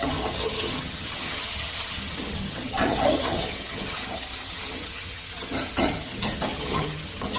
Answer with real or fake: fake